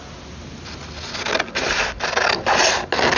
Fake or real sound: real